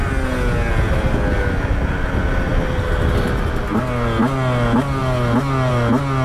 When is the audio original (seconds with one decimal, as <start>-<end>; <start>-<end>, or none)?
0.0-6.2